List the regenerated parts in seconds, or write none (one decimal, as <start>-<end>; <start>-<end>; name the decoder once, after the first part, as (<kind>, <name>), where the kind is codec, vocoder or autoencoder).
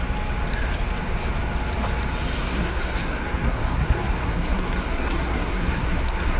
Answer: 2.4-6.4 (codec, SNAC)